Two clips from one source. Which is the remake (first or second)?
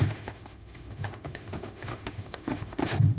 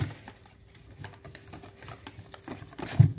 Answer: first